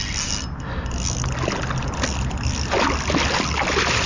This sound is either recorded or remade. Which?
recorded